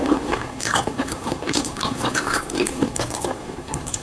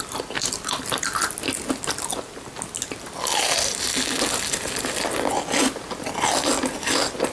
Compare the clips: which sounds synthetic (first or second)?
first